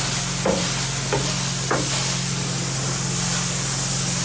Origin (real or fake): real